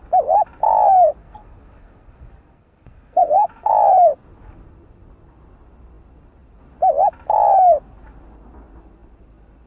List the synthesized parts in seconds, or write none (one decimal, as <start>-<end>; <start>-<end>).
1.2-3.7